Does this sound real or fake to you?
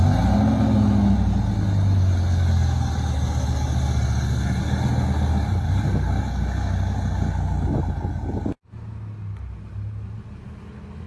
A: real